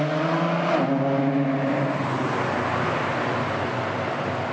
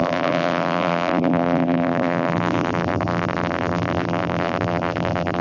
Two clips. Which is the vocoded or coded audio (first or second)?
second